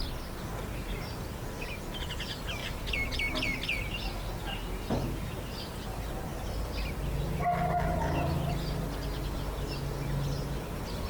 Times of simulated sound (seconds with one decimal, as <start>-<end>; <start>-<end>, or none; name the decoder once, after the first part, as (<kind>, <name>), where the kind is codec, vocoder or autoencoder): none